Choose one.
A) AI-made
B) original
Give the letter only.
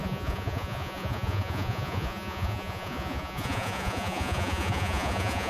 A